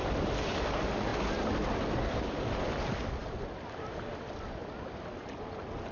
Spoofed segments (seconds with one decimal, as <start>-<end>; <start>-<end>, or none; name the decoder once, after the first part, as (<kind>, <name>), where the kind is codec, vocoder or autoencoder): none

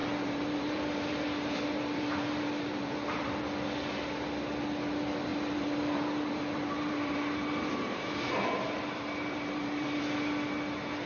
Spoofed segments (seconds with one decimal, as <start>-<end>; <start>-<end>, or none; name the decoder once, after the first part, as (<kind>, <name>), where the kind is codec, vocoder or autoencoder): 0.0-3.4 (vocoder, BigVGAN v2); 5.3-10.0

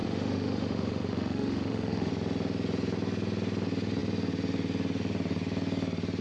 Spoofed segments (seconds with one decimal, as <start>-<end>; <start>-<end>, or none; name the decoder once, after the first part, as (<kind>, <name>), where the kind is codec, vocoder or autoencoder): 0.0-2.1 (autoencoder, DAC-VAE)

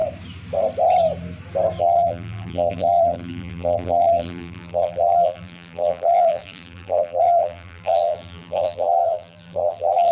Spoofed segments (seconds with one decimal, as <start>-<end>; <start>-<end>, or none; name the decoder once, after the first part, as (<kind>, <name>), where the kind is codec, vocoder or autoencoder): 1.8-10.1 (vocoder, BigVGAN v2)

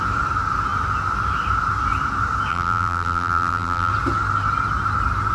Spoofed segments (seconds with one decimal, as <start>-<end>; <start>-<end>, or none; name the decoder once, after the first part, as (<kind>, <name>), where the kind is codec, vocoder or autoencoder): 2.5-3.9 (vocoder, BigVGAN v2)

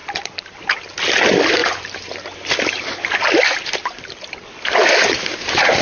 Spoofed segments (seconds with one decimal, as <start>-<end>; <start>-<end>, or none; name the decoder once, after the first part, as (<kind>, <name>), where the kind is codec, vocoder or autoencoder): 0.0-0.6 (vocoder, BigVGAN v2); 1.6-4.9

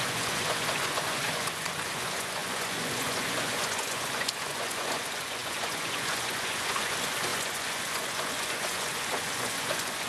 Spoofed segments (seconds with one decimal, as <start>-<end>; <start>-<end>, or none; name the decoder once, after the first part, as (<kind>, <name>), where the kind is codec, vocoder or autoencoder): 0.0-10.1 (vocoder, Vocos)